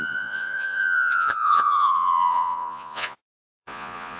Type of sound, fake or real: fake